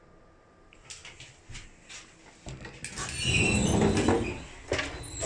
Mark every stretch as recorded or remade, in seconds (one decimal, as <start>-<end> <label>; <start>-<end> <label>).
0.0-5.3 recorded